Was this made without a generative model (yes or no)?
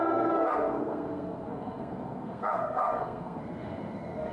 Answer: no